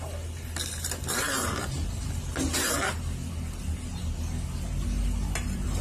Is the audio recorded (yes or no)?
no